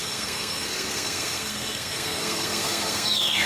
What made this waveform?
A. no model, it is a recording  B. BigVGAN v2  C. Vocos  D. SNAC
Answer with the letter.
D